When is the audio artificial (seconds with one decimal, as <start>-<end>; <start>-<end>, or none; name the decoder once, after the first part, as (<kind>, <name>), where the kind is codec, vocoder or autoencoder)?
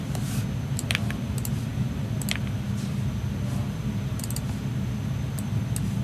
none